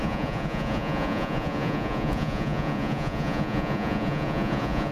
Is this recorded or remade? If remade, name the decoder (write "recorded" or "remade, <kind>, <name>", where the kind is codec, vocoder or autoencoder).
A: remade, vocoder, Vocos